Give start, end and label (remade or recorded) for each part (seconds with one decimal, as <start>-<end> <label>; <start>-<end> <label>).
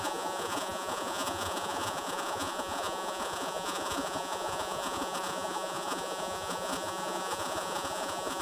0.0-8.4 remade